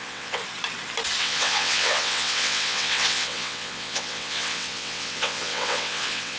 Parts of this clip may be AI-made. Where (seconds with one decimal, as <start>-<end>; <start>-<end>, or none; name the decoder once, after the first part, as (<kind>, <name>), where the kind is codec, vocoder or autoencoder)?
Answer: 0.0-0.4 (vocoder, WaveNeXt); 1.2-6.4